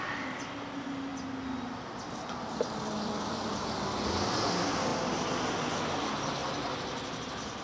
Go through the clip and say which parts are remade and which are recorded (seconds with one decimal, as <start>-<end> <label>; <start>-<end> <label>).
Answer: 0.0-7.6 recorded